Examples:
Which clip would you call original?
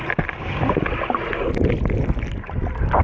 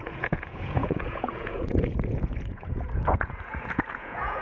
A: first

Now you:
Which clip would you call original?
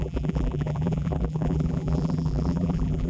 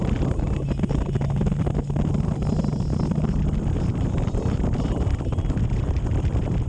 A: second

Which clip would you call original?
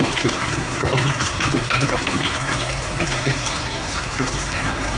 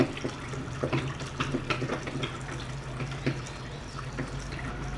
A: second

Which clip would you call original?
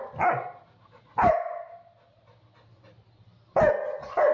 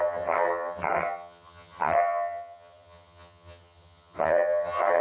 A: first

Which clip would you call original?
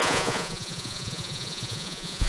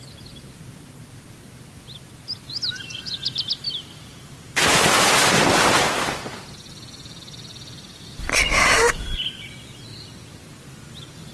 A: second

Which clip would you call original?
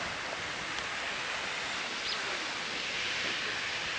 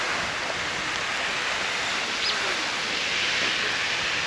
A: second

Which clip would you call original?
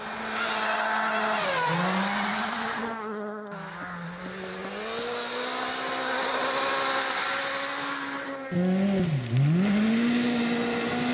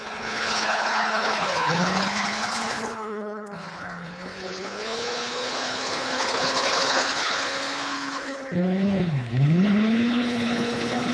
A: first